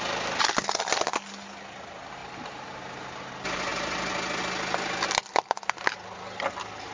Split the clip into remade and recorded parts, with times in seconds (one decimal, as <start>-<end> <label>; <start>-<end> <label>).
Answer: 0.0-2.2 recorded; 2.2-3.3 remade; 3.3-6.9 recorded